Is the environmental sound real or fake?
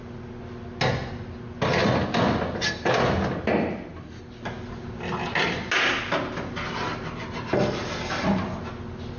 real